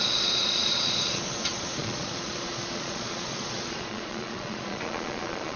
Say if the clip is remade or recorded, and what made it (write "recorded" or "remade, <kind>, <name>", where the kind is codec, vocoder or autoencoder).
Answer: remade, vocoder, Vocos